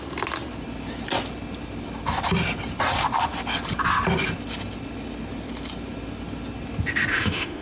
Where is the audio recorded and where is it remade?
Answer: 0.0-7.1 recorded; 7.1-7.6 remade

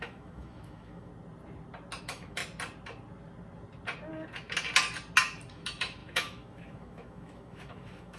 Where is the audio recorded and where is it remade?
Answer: 0.0-1.1 remade; 1.1-2.0 recorded; 2.0-2.4 remade; 2.4-5.5 recorded; 5.5-8.2 remade

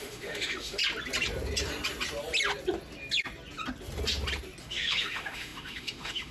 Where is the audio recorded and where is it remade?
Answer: 0.0-0.8 remade; 0.8-4.6 recorded; 4.6-6.3 remade